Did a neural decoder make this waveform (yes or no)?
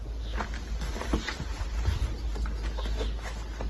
no